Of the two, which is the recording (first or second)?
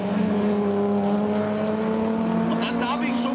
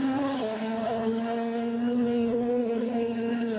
first